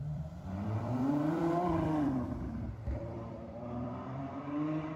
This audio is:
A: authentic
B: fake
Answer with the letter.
B